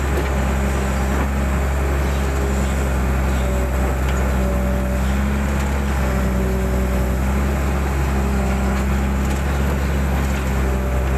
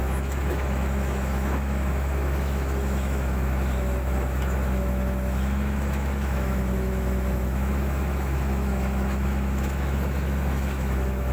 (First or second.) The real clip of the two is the first